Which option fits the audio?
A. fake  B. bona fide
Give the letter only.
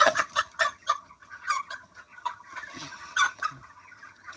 A